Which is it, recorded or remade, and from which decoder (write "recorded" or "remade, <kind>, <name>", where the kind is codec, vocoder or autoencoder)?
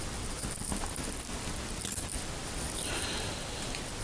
recorded